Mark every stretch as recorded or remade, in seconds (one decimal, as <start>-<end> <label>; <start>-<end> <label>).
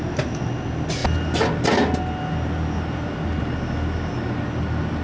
0.0-5.0 recorded